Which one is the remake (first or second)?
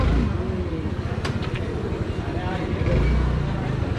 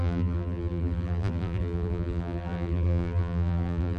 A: second